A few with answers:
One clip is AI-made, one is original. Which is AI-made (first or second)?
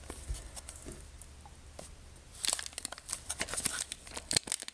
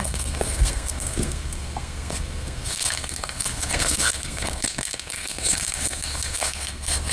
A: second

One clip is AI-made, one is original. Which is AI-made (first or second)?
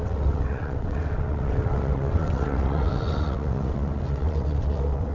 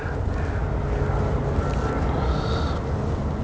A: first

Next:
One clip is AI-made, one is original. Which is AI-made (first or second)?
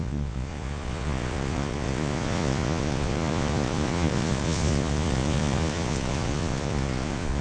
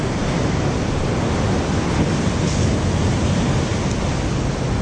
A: first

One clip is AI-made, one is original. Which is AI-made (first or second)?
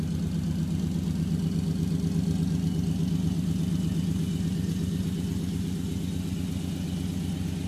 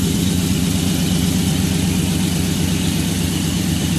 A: second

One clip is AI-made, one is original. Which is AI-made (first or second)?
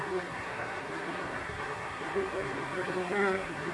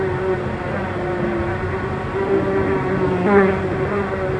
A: first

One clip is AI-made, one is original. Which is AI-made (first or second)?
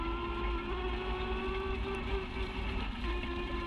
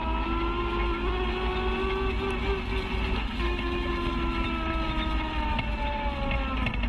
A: first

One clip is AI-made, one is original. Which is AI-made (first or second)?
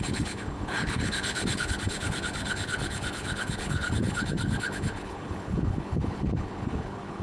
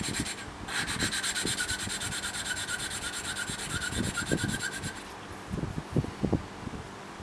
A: first